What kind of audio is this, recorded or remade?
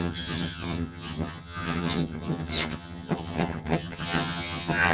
remade